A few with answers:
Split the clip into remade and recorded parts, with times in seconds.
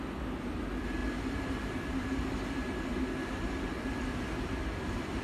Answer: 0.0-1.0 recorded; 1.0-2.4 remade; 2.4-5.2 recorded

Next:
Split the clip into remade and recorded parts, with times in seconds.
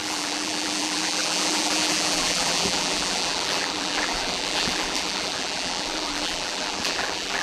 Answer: 0.0-7.4 remade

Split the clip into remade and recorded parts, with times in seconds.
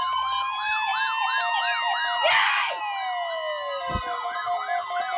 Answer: 0.0-5.2 recorded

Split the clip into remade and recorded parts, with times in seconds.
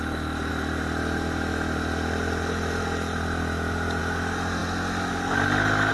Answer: 0.0-5.9 recorded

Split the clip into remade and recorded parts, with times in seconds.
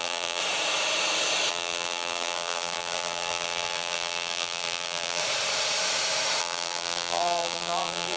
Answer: 0.0-0.4 remade; 0.4-1.5 recorded; 1.5-5.2 remade; 5.2-6.4 recorded; 6.4-8.2 remade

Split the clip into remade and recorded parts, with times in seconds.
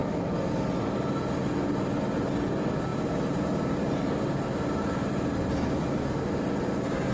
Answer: 0.0-2.9 recorded; 2.9-7.1 remade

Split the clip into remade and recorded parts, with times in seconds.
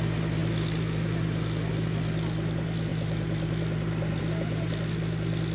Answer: 0.0-5.5 recorded